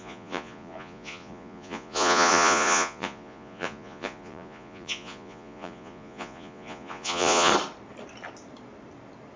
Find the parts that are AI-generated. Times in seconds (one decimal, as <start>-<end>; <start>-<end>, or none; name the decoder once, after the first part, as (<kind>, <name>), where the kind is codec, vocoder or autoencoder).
0.0-7.5 (vocoder, Vocos)